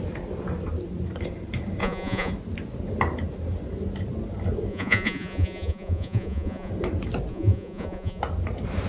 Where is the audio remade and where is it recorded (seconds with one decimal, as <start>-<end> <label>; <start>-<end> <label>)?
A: 0.0-1.8 recorded; 1.8-2.3 remade; 2.3-4.7 recorded; 4.7-6.7 remade; 6.7-7.3 recorded; 7.3-8.2 remade; 8.2-8.9 recorded

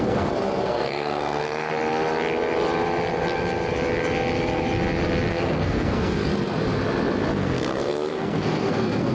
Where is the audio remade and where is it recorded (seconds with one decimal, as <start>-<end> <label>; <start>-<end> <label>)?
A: 0.0-1.7 remade; 1.7-5.3 recorded; 5.3-6.3 remade; 6.3-7.3 recorded; 7.3-9.1 remade

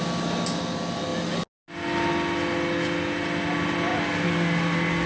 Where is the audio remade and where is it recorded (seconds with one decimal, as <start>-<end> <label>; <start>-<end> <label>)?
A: 0.0-5.1 recorded

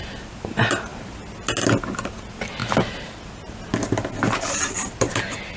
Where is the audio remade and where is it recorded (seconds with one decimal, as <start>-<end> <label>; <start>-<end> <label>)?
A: 0.0-5.6 recorded